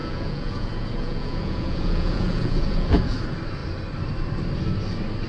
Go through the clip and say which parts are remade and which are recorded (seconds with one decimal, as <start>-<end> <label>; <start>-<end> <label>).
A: 0.0-3.2 remade; 3.2-5.3 recorded